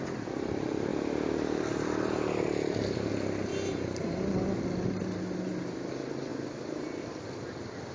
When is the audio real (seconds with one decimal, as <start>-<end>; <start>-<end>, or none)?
0.0-7.9